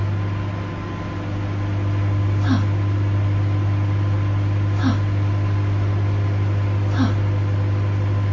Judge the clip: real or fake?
real